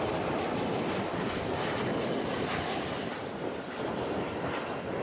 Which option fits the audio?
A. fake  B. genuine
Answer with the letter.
B